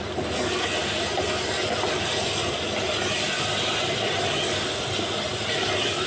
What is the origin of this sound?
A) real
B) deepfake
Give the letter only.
A